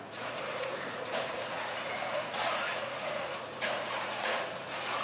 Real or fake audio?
fake